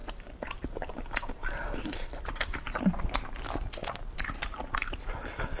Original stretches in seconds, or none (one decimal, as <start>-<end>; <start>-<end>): 3.4-3.8; 5.0-5.6